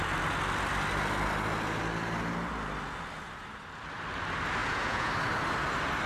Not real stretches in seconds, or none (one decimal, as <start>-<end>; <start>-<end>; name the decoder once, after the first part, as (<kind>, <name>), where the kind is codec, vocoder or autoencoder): 4.6-5.1 (vocoder, Vocos)